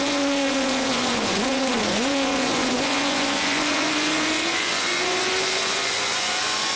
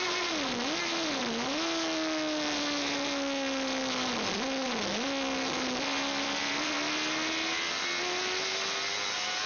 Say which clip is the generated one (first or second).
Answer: first